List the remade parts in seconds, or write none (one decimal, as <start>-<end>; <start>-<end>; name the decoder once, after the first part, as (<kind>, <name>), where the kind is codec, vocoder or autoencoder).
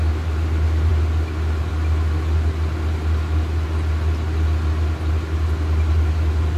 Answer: none